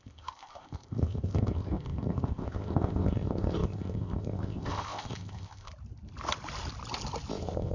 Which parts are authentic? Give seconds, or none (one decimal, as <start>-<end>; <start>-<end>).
5.7-7.3

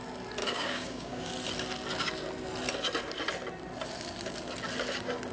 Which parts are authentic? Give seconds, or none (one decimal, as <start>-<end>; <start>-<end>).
0.0-0.4; 1.3-5.3

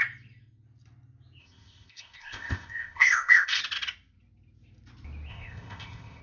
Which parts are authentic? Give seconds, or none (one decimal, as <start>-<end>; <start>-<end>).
0.0-1.4; 3.6-5.3

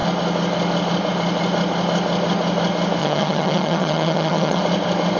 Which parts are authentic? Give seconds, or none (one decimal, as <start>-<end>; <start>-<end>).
0.0-3.0; 4.6-5.2

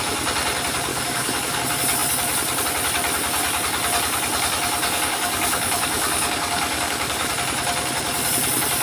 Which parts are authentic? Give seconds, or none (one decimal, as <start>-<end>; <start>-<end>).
0.0-0.9; 1.6-4.8; 7.3-8.8

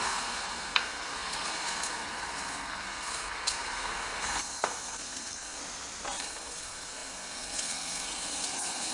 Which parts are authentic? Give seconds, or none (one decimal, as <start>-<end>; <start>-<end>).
5.6-6.2